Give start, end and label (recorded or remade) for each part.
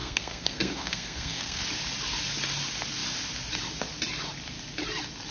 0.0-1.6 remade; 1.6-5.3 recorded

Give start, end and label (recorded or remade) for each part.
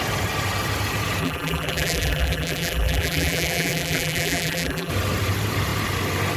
0.0-1.2 recorded; 1.2-4.9 remade; 4.9-6.4 recorded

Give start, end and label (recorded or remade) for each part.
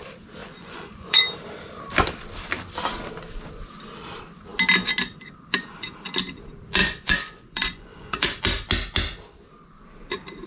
0.0-0.4 recorded; 0.4-1.2 remade; 1.2-6.8 recorded; 6.8-8.4 remade; 8.4-10.5 recorded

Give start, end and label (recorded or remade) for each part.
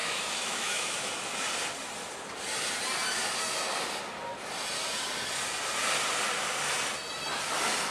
0.0-1.1 remade; 1.1-7.9 recorded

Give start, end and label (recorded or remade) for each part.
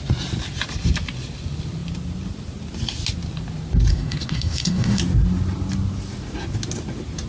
0.0-3.9 recorded; 3.9-5.0 remade; 5.0-7.3 recorded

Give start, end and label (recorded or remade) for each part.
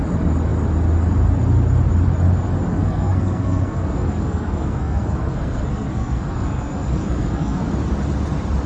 0.0-2.7 recorded; 2.7-7.7 remade; 7.7-8.7 recorded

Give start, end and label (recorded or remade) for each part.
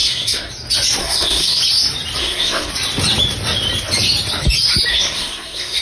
0.0-0.5 remade; 0.5-1.0 recorded; 1.0-1.6 remade; 1.6-2.2 recorded; 2.2-2.7 remade; 2.7-4.9 recorded; 4.9-5.8 remade